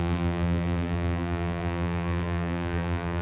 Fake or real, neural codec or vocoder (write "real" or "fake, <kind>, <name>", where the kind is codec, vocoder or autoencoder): fake, vocoder, BigVGAN v2